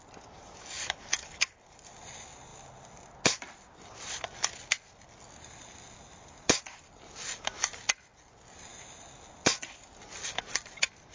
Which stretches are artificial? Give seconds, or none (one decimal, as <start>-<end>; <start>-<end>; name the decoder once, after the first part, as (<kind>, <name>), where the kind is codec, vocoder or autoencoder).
0.8-1.5 (codec, DAC)